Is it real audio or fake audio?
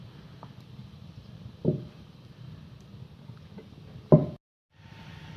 real